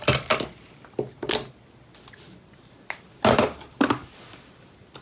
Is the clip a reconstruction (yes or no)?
no